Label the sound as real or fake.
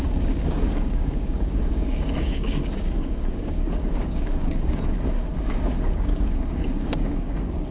fake